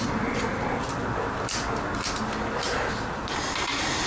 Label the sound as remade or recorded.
recorded